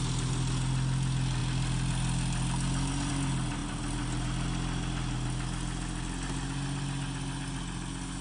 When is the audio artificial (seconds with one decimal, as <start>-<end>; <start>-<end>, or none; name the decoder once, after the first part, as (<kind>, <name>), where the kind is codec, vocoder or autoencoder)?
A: none